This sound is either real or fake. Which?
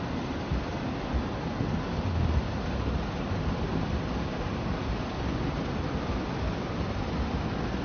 real